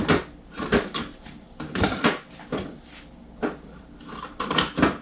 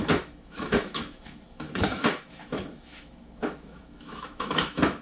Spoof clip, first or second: second